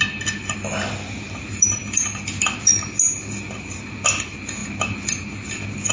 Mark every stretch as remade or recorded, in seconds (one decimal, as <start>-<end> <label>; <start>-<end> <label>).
0.0-5.9 recorded